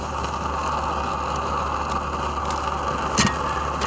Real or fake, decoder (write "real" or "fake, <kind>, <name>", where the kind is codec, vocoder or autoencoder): real